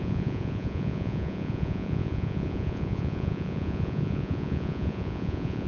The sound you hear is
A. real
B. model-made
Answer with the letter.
B